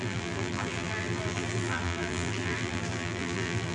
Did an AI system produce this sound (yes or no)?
yes